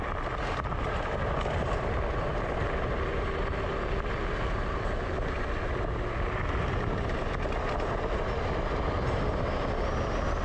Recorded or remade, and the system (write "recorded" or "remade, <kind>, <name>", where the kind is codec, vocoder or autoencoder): recorded